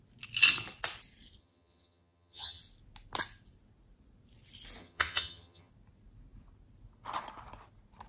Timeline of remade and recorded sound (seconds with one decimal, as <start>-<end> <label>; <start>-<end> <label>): 0.0-1.4 recorded; 1.4-2.6 remade; 2.6-4.8 recorded; 4.8-5.7 remade; 5.7-8.1 recorded